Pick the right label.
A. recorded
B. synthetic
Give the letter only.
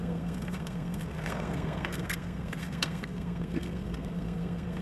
B